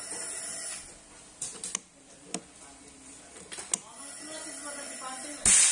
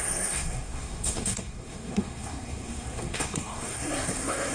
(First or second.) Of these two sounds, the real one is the first